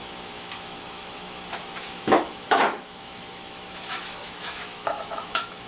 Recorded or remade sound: remade